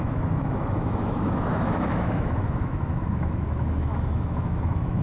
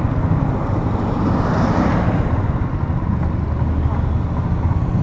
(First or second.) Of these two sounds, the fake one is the first